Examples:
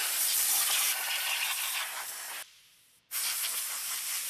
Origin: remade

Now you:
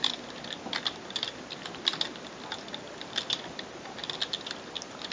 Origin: recorded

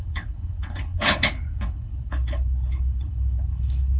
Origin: remade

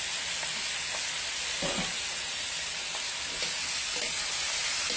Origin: recorded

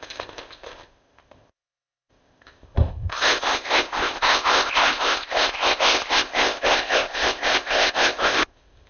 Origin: remade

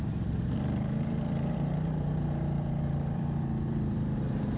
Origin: remade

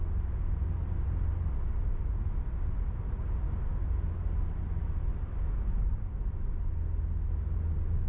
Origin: recorded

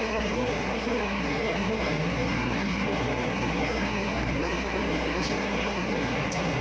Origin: remade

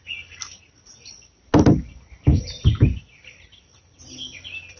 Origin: recorded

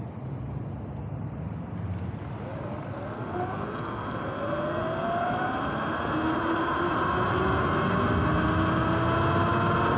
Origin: recorded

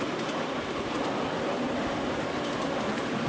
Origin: recorded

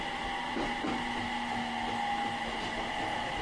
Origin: recorded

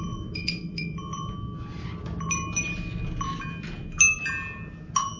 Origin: recorded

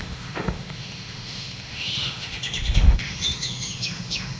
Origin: remade